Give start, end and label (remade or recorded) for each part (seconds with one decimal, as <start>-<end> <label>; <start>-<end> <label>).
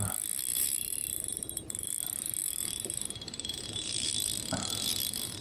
0.0-0.5 recorded; 0.5-1.9 remade; 1.9-2.4 recorded; 2.4-3.6 remade; 3.6-5.4 recorded